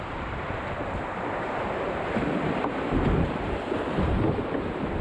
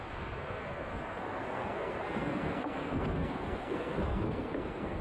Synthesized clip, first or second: second